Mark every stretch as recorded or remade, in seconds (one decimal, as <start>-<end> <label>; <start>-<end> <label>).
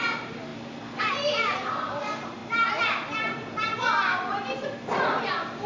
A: 0.0-5.7 recorded